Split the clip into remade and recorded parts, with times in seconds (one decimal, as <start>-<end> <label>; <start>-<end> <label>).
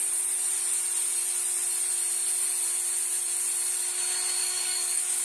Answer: 0.0-4.4 recorded; 4.4-5.2 remade